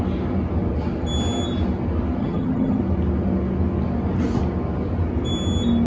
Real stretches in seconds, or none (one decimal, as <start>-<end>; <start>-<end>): 0.0-2.2; 2.8-5.9